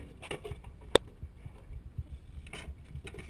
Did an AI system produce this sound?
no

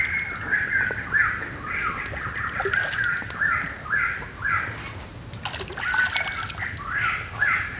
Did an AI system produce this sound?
no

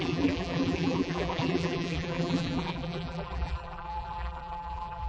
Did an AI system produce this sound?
yes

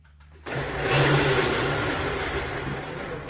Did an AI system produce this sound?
yes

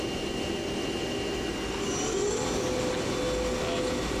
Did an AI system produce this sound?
no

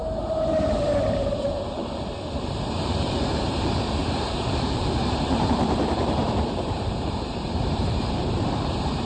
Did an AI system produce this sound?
yes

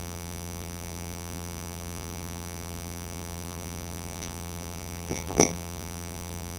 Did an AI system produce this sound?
yes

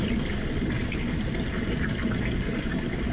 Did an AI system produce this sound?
no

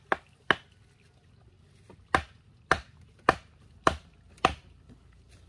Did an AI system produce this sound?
no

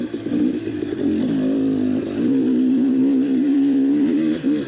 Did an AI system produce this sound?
yes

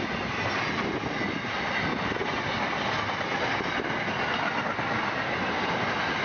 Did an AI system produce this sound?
no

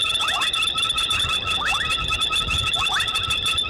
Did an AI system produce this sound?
yes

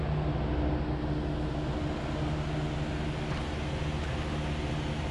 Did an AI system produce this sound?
no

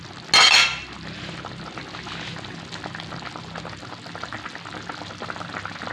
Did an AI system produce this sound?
no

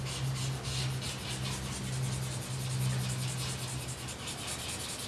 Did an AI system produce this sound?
no